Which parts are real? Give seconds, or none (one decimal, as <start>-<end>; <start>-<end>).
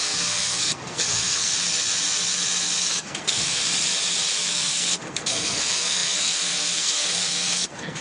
1.5-2.9; 3.6-4.5